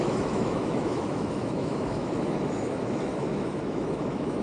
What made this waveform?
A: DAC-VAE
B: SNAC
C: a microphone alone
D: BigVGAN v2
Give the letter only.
A